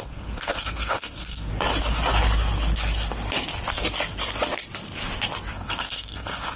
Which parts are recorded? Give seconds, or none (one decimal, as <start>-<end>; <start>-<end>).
1.5-5.5